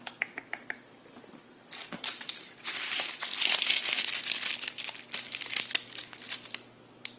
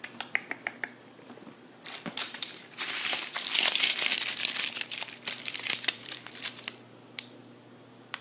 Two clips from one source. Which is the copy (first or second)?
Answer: second